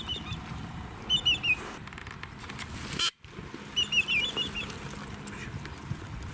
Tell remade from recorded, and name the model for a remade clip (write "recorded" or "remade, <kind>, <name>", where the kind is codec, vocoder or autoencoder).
recorded